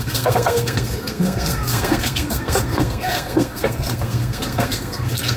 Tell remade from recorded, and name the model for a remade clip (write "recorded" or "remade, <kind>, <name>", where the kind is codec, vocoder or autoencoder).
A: remade, codec, SNAC